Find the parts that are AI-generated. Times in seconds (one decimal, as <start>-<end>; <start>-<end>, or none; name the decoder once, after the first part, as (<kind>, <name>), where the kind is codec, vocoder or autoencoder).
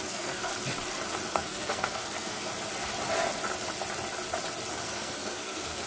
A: 0.0-0.5 (codec, SNAC); 1.3-2.5; 4.7-5.9